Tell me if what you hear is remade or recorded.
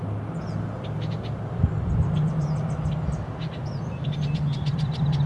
recorded